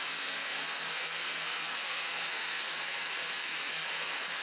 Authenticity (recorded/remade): remade